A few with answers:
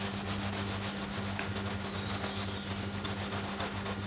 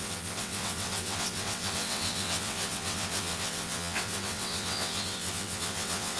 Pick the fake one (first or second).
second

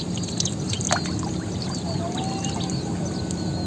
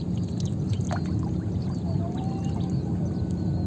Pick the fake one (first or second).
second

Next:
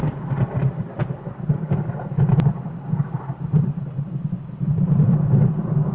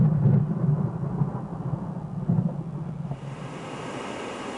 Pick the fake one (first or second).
first